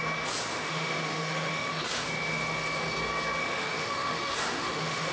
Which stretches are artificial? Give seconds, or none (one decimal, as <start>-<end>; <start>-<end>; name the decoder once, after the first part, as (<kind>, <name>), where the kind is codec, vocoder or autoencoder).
0.5-1.8 (autoencoder, DAC-VAE); 3.4-5.1